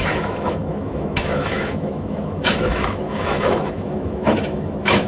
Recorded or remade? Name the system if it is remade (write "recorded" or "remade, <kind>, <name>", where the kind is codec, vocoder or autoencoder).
remade, autoencoder, DAC-VAE